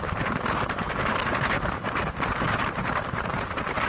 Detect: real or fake fake